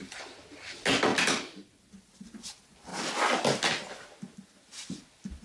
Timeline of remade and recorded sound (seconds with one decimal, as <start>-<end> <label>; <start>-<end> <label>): 0.0-2.9 recorded; 2.9-3.4 remade; 3.4-5.4 recorded